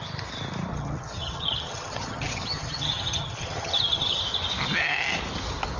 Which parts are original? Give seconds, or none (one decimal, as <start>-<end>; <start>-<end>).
0.0-0.7; 4.2-5.8